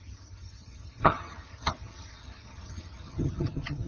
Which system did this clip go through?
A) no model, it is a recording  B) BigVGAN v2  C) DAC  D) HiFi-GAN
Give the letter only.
D